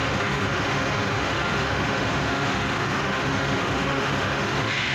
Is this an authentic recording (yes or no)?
no